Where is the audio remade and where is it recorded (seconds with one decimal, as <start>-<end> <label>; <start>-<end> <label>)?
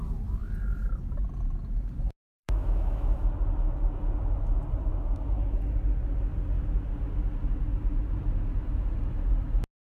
0.0-2.3 recorded; 2.3-3.2 remade; 3.2-9.8 recorded